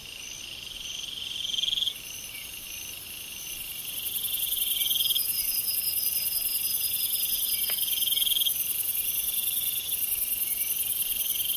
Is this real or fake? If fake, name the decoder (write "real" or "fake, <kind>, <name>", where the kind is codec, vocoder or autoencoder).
real